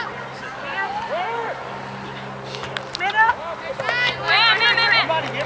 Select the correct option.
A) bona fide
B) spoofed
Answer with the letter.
A